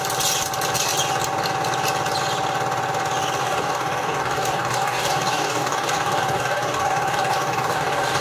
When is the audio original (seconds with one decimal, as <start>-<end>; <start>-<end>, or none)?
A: 0.0-3.4

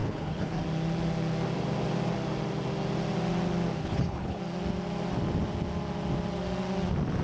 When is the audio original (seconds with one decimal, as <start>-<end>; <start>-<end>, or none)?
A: 0.6-3.8; 4.4-7.2

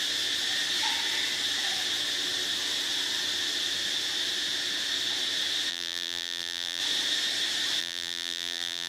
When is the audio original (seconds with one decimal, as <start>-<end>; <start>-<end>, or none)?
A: 0.0-5.7; 6.8-7.8

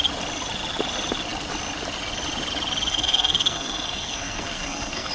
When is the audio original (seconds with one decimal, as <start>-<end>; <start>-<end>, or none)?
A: 0.0-2.9

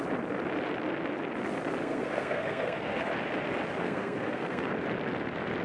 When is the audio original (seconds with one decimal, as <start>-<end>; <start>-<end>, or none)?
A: 0.0-1.8; 3.1-3.8; 4.7-5.6

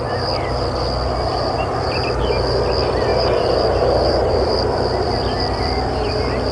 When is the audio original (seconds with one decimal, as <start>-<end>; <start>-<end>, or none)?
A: 0.0-1.3; 2.2-3.1; 6.1-6.5

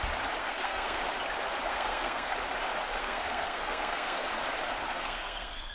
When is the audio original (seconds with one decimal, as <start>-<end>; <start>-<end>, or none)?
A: 0.0-0.4; 1.0-1.7; 2.3-3.0; 4.3-4.8